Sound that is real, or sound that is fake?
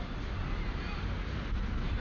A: real